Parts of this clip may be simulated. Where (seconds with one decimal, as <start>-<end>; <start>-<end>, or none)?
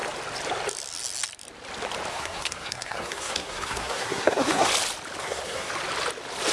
2.1-4.7; 5.2-5.7